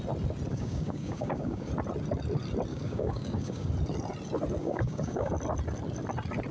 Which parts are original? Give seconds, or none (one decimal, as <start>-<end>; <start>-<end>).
0.0-0.5; 1.7-2.7; 3.7-4.6; 5.3-6.5